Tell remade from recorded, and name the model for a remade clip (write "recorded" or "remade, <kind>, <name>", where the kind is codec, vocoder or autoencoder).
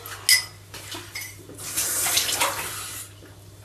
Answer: recorded